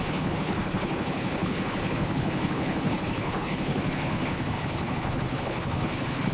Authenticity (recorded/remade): remade